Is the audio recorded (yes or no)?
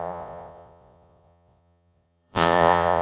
no